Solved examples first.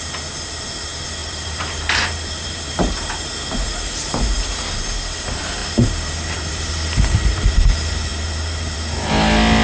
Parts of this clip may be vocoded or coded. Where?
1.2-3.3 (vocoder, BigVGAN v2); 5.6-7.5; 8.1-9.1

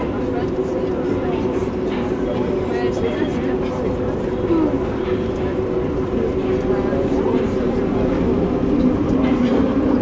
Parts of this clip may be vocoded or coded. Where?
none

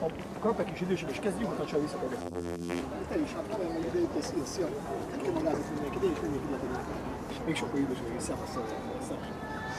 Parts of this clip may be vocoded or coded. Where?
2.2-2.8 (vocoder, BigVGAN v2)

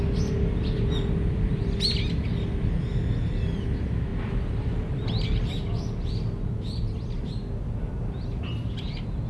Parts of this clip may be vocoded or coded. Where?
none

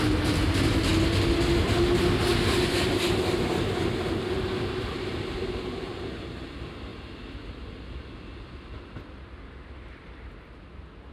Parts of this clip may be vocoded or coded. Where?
none

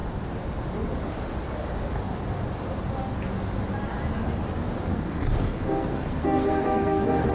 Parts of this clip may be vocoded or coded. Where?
4.9-7.3 (codec, SNAC)

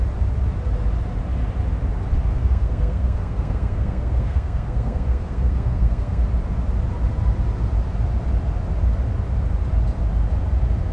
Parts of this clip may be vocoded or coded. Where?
2.3-6.2 (codec, SNAC)

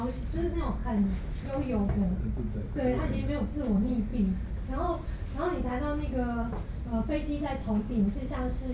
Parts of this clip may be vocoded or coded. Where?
none